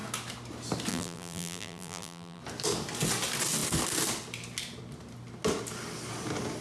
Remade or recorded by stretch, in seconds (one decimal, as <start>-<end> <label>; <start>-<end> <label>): 0.0-0.9 recorded; 0.9-2.4 remade; 2.4-6.6 recorded